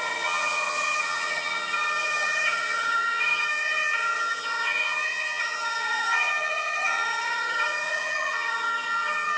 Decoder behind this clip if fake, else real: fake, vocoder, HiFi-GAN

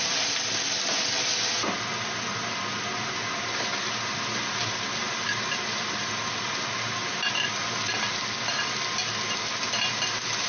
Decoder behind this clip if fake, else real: real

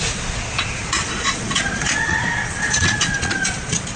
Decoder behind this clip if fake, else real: fake, vocoder, Vocos